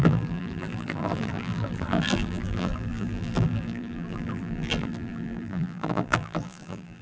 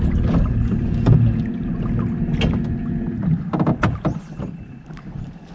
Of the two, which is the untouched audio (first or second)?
second